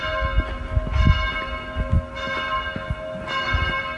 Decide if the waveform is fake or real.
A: real